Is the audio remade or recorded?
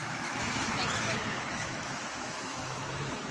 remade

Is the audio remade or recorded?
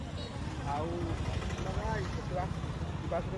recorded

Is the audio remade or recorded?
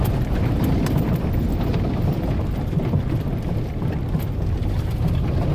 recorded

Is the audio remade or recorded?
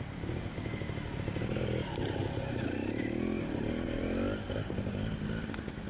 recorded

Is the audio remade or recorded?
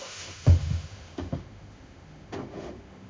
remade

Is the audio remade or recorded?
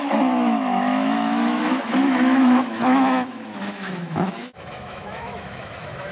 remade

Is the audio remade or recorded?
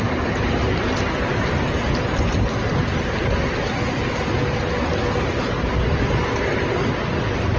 recorded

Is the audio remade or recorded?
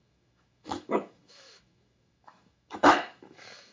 remade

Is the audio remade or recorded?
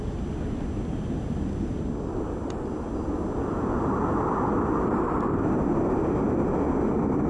recorded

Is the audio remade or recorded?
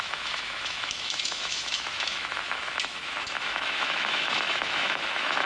remade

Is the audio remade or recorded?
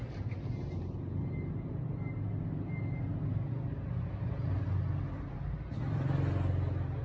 recorded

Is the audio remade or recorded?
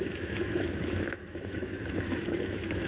remade